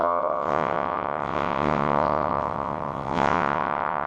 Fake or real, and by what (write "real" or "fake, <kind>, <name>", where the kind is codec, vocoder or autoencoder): fake, vocoder, WaveNeXt